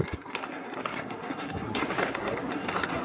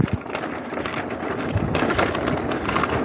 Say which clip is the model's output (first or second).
first